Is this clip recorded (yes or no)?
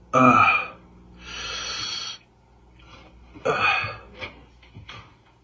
yes